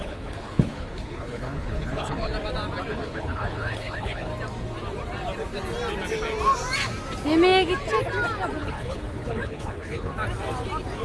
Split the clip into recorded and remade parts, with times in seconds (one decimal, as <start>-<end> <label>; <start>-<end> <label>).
0.0-2.3 remade; 2.3-2.9 recorded; 2.9-4.3 remade; 4.3-8.6 recorded; 8.6-10.1 remade; 10.1-11.0 recorded